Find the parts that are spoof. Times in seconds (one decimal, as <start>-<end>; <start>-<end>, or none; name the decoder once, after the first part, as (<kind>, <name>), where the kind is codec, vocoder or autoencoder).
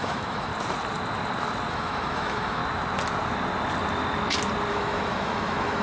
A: 0.0-0.5 (autoencoder, DAC-VAE); 1.7-2.6; 4.7-5.8